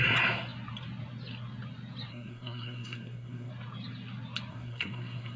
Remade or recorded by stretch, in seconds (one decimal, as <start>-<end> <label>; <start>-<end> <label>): 0.0-2.1 recorded; 2.1-3.5 remade; 3.5-4.5 recorded; 4.5-5.4 remade